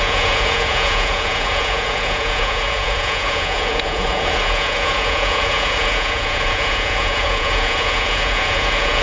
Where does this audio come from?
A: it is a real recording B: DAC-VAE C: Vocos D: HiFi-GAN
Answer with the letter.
C